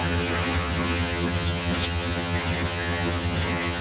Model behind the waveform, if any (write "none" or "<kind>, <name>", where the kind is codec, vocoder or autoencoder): vocoder, HiFi-GAN